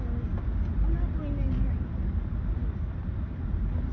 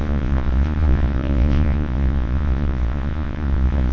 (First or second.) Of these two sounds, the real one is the first